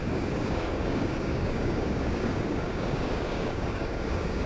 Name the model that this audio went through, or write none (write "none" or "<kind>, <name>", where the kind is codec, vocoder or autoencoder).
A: codec, DAC